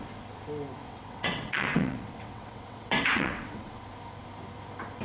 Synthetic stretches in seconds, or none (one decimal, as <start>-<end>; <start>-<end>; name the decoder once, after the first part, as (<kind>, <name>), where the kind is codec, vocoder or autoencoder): 0.8-3.8 (vocoder, WaveNeXt)